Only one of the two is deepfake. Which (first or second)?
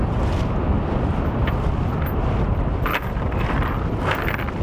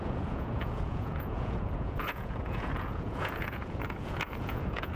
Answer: second